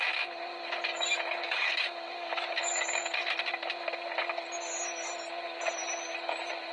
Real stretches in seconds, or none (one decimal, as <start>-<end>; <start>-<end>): 0.0-0.9; 3.3-6.7